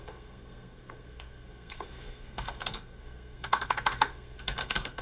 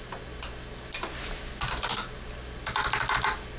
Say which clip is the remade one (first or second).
first